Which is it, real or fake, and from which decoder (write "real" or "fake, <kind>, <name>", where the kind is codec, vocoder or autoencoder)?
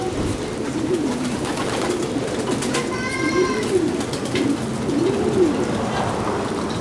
fake, vocoder, BigVGAN v2